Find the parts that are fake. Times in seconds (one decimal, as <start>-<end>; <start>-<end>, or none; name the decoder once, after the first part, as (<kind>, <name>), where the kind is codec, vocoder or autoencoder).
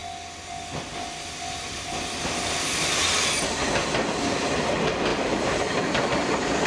3.1-3.6 (vocoder, BigVGAN v2); 5.1-5.8